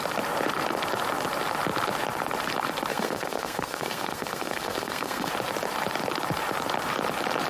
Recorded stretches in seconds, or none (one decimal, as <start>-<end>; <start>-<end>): 0.0-2.9; 5.3-7.5